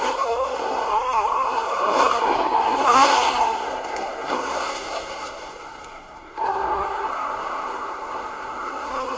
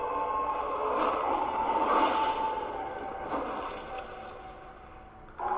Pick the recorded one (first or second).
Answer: second